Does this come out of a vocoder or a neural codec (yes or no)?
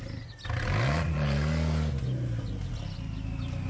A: no